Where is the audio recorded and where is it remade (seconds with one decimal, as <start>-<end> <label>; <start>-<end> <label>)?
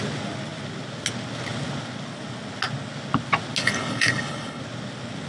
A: 0.0-3.6 recorded; 3.6-4.6 remade; 4.6-5.3 recorded